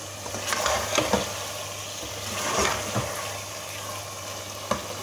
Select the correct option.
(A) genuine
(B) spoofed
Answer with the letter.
A